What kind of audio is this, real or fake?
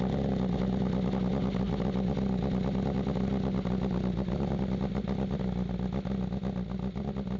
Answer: real